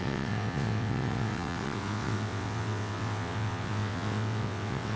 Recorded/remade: remade